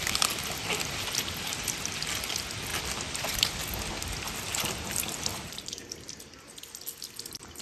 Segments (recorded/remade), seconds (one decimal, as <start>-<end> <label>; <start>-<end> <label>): 0.0-5.3 recorded; 5.3-5.9 remade; 5.9-7.6 recorded